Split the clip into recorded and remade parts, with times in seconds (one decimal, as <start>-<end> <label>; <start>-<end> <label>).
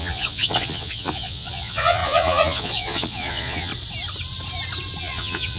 0.0-3.7 remade; 3.7-5.0 recorded; 5.0-5.6 remade